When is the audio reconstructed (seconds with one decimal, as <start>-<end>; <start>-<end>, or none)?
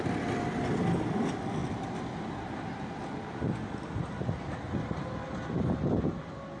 1.6-3.3